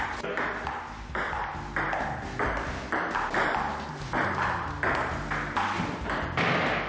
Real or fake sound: real